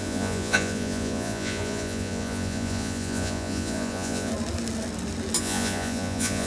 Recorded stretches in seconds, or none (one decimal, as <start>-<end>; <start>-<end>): 4.3-5.4